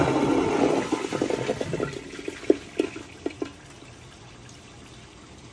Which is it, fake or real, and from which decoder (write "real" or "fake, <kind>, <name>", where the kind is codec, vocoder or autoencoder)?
real